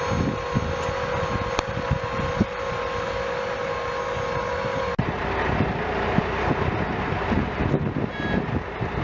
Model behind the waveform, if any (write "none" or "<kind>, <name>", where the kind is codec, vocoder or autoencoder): none